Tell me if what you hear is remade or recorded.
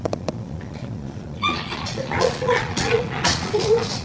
remade